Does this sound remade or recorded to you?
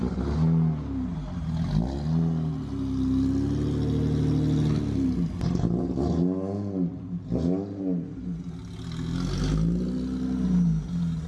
recorded